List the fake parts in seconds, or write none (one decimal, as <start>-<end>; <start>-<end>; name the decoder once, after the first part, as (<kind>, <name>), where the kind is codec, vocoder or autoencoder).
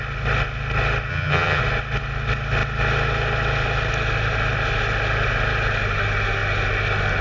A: 1.1-1.6 (vocoder, HiFi-GAN)